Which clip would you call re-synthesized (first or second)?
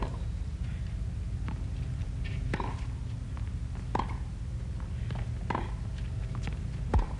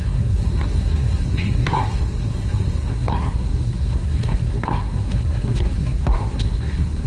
second